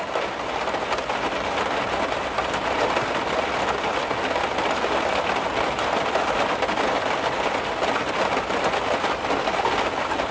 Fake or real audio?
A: real